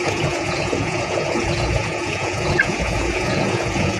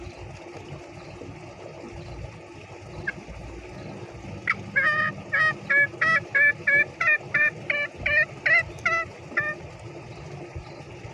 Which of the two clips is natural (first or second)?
second